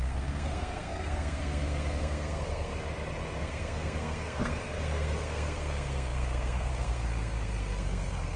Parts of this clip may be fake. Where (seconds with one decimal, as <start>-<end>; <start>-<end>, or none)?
0.0-2.7; 3.4-8.4